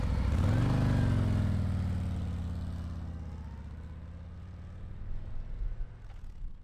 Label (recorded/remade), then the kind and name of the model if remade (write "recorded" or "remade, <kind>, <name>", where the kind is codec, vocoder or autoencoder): recorded